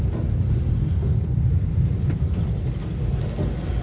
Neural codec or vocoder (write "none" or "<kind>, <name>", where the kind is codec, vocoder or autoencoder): none